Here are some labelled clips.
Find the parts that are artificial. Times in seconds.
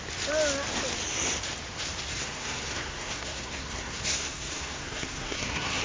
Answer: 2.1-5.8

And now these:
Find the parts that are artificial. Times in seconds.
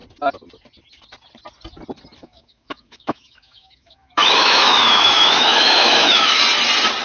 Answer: 2.2-6.4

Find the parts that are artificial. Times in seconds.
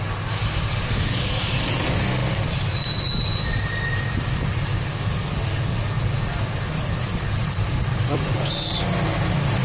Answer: 2.2-3.3; 7.4-8.4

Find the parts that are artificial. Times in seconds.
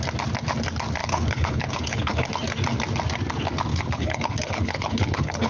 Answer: 1.0-2.3; 3.7-5.5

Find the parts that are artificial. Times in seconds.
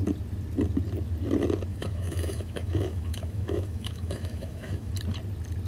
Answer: 1.7-4.9